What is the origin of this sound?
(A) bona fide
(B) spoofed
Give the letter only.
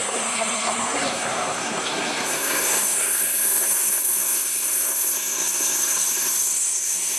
B